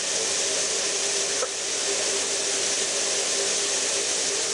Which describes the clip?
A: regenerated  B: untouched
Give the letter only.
B